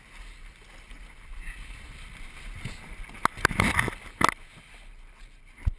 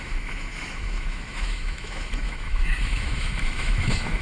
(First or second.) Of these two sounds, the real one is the first